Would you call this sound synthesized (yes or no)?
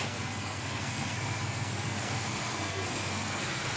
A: yes